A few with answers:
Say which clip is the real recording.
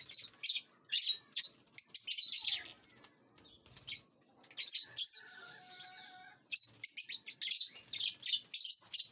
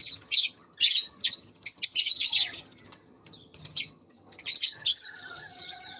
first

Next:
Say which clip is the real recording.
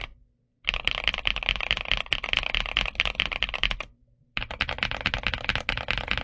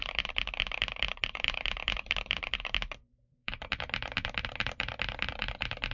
first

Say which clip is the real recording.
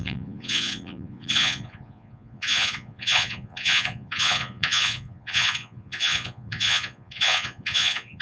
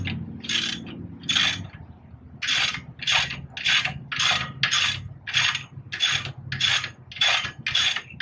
second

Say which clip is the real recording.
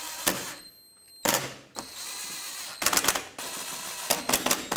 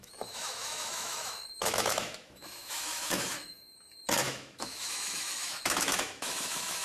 first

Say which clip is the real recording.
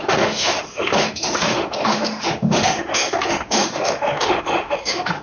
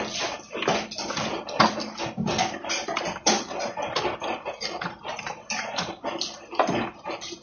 second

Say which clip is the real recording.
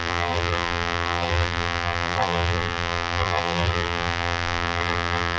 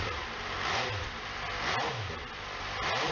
second